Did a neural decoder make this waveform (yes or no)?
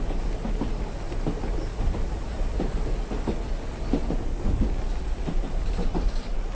no